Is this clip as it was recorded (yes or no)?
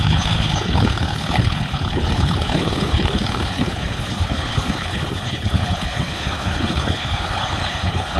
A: no